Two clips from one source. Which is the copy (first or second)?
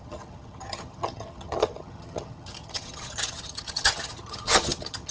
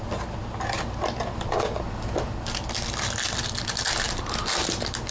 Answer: first